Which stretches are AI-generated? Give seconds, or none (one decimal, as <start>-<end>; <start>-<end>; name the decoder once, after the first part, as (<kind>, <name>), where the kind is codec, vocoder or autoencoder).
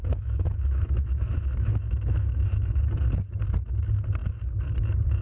0.0-2.8 (autoencoder, DAC-VAE)